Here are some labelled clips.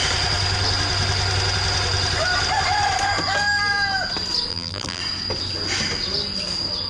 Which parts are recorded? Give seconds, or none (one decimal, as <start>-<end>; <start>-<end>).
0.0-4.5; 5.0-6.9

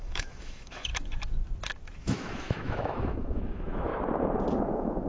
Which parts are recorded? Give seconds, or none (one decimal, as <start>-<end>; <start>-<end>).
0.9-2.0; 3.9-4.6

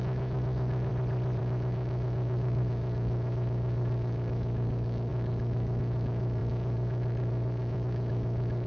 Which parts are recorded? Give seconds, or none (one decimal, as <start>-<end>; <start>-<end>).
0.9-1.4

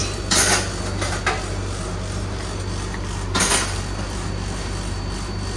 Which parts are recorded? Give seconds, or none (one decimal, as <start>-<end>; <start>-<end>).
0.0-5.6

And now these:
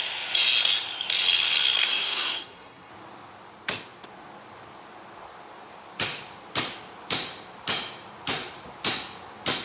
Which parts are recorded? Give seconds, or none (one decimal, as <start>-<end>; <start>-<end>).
0.0-1.8; 2.9-9.6